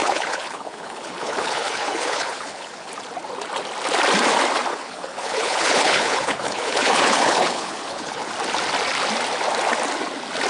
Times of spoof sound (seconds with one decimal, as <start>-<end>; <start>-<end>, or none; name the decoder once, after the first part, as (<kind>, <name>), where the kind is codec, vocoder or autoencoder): 0.0-2.9 (codec, HILCodec); 4.7-8.3